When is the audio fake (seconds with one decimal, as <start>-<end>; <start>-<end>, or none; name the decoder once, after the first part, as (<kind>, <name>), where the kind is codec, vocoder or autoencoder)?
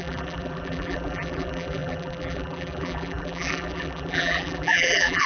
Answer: 0.0-5.3 (vocoder, BigVGAN v2)